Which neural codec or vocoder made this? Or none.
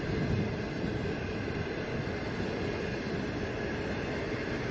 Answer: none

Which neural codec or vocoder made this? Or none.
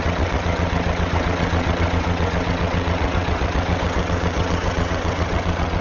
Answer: vocoder, WaveNeXt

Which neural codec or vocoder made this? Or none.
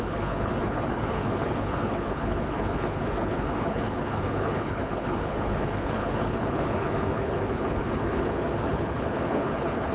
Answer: codec, HILCodec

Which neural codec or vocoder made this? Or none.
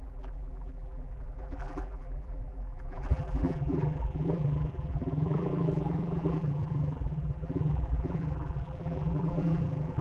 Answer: vocoder, BigVGAN v2